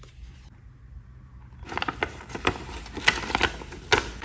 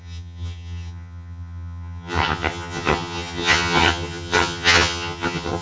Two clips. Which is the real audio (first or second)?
first